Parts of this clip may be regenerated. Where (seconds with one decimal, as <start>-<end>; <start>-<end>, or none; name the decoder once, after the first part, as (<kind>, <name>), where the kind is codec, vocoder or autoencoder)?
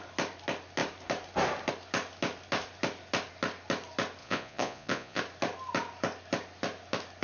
4.2-5.2 (vocoder, Vocos)